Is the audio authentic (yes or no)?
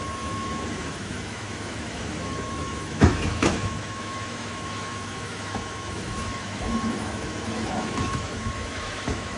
no